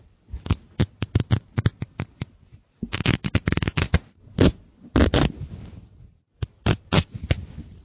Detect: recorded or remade recorded